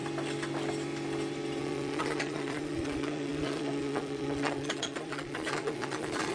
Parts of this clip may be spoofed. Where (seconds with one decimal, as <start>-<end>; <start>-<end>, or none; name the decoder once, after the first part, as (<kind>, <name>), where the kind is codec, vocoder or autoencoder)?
1.6-6.3 (vocoder, Vocos)